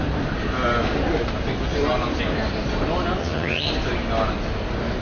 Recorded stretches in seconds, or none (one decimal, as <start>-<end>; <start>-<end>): 0.0-3.2; 3.7-5.0